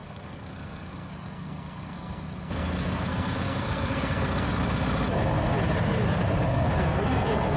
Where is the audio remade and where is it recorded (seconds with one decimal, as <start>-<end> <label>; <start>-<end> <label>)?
0.0-4.5 remade; 4.5-6.5 recorded; 6.5-7.6 remade

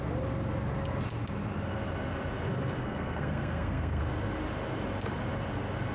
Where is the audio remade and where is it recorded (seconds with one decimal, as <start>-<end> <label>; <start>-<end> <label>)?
0.0-2.8 recorded; 2.8-4.0 remade; 4.0-5.9 recorded

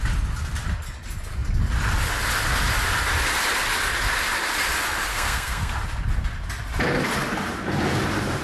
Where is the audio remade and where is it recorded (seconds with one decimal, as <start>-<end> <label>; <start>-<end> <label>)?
0.0-5.1 recorded; 5.1-5.7 remade; 5.7-8.4 recorded

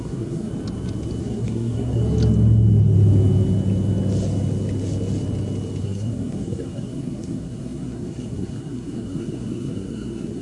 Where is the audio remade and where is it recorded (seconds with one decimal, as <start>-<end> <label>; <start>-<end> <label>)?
0.0-0.5 remade; 0.5-1.2 recorded; 1.2-2.0 remade; 2.0-5.8 recorded; 5.8-10.4 remade

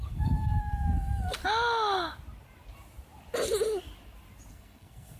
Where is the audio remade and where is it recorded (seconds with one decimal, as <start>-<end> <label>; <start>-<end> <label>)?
0.0-1.4 remade; 1.4-4.5 recorded; 4.5-5.2 remade

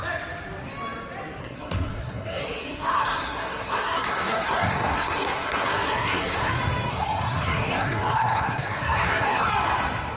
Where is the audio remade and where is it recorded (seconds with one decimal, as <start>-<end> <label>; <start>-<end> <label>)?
0.0-1.4 recorded; 1.4-6.5 remade; 6.5-6.9 recorded; 6.9-9.5 remade; 9.5-10.2 recorded

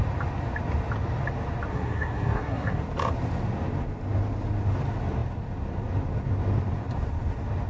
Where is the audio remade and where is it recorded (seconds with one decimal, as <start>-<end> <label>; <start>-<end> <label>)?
0.0-1.7 recorded; 1.7-2.8 remade; 2.8-7.7 recorded

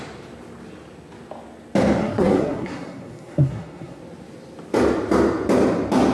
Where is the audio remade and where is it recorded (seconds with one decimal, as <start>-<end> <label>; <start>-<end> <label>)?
0.0-2.0 recorded; 2.0-4.0 remade; 4.0-6.1 recorded